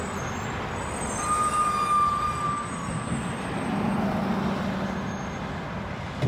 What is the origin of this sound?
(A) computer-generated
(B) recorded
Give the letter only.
B